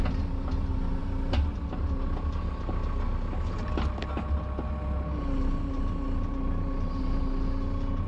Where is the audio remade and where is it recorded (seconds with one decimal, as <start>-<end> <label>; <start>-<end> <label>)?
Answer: 0.0-8.1 recorded